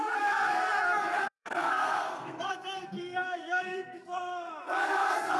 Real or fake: fake